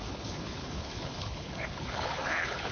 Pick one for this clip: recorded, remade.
remade